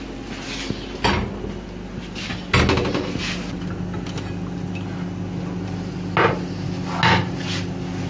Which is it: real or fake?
real